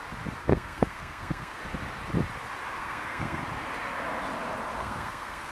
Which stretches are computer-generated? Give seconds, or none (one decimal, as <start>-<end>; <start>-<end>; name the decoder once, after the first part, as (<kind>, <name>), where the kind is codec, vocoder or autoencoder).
0.4-1.6 (codec, SNAC); 2.8-3.4; 4.8-5.5

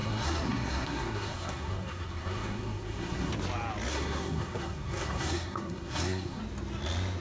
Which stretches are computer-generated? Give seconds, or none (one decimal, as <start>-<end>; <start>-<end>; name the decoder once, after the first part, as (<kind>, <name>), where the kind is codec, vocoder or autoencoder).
0.0-3.3 (codec, SNAC); 3.9-6.4